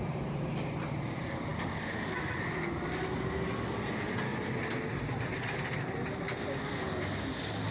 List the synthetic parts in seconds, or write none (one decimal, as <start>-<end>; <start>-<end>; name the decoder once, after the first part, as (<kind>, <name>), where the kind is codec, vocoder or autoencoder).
none